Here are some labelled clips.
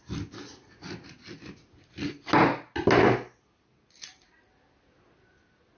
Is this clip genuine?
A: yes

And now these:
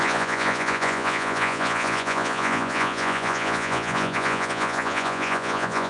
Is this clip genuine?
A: no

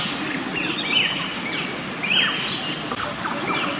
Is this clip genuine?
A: yes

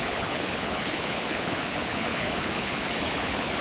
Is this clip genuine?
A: no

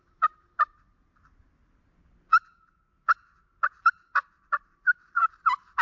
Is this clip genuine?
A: yes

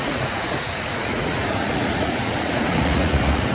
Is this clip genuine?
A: no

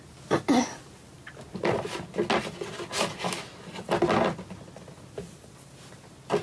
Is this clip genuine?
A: yes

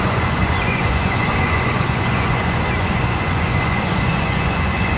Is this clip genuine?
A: no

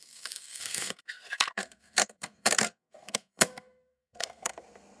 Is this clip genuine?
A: no